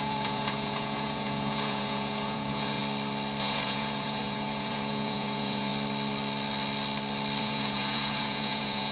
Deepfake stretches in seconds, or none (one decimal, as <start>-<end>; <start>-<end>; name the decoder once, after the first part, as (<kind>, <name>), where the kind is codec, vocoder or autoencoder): 0.0-2.8 (vocoder, Vocos); 3.4-5.7; 7.4-8.9